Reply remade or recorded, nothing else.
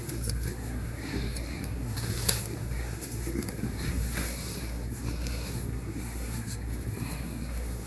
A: remade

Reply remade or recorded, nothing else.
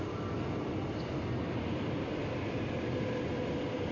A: recorded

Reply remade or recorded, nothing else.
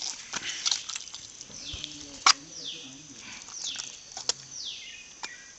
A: recorded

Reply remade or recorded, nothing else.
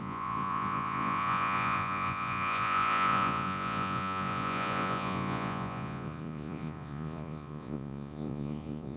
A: remade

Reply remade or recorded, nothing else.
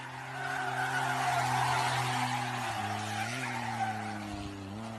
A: recorded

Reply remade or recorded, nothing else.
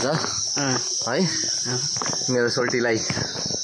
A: recorded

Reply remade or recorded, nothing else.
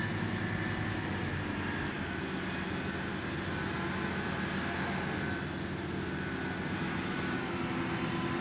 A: recorded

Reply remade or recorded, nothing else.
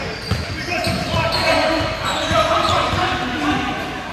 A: recorded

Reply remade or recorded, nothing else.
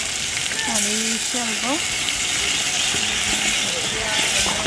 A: recorded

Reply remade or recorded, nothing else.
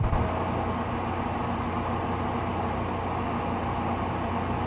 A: recorded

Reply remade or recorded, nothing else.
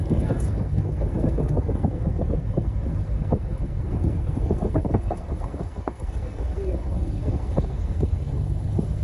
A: remade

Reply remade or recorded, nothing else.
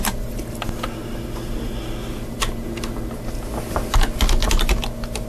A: recorded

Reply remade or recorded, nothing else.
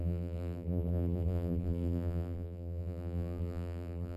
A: remade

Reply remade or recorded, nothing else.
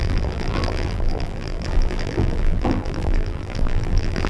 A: remade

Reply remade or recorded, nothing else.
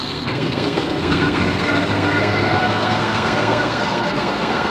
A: remade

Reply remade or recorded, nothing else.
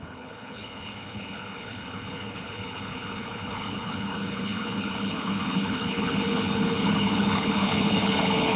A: remade